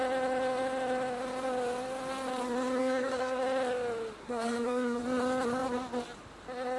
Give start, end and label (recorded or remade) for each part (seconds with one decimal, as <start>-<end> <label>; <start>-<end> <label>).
0.0-2.8 recorded; 2.8-3.4 remade; 3.4-4.2 recorded; 4.2-5.0 remade; 5.0-6.8 recorded